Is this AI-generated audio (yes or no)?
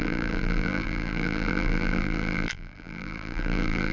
yes